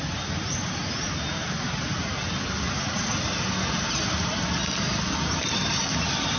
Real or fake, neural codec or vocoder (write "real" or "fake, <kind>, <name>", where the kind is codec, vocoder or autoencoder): real